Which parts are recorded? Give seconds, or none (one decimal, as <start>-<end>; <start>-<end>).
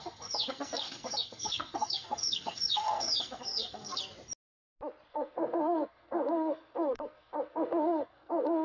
4.0-5.1